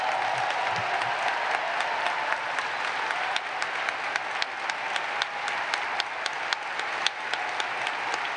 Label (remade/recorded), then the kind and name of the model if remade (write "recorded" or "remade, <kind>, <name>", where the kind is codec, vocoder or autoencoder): recorded